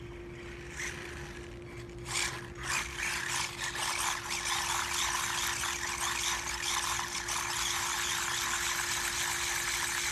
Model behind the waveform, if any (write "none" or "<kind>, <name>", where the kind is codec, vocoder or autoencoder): none